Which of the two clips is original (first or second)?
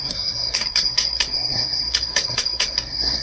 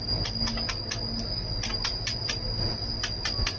second